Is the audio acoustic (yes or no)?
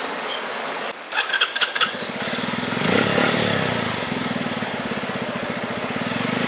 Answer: no